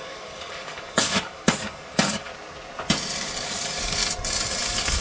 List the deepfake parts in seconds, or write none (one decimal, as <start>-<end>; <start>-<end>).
0.0-2.3; 3.2-4.0; 4.6-5.0